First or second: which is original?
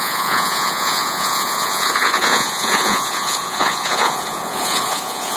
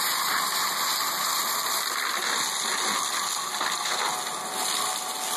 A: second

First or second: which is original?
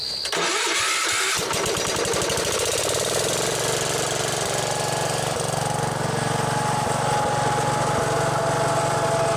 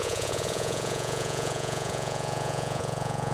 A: first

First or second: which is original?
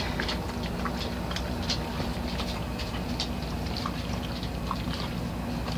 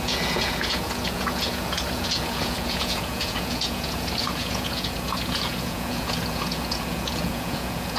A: first